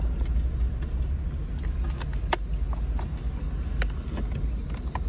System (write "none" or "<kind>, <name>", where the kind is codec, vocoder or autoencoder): none